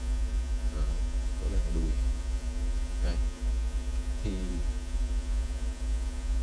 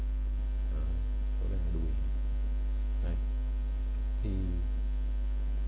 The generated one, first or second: first